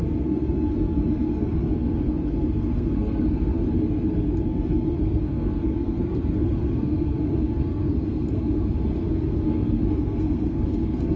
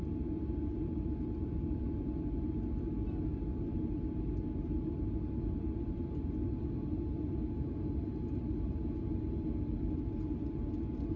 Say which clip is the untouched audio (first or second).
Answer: second